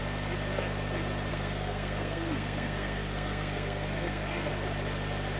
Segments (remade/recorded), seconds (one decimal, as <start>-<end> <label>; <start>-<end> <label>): 0.0-1.3 recorded; 1.3-4.5 remade; 4.5-5.4 recorded